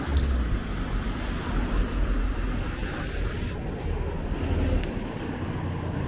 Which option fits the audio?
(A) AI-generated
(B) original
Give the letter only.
B